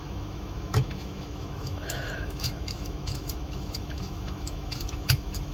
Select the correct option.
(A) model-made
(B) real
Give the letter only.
A